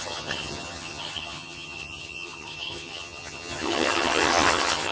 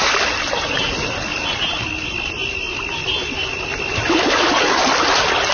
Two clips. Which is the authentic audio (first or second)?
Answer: second